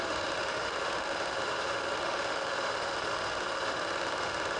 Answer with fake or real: fake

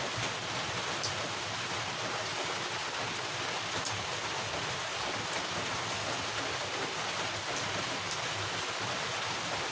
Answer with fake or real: real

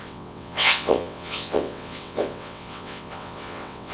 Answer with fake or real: fake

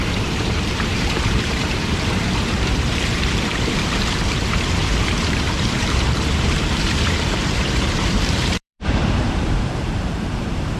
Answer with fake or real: fake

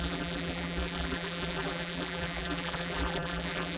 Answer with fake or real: fake